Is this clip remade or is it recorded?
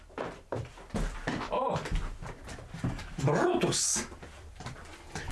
remade